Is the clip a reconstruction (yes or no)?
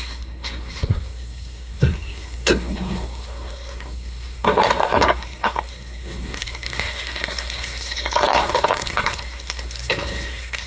yes